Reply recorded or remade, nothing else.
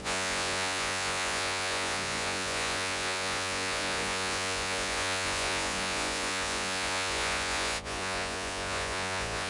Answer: remade